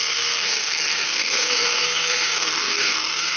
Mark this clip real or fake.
fake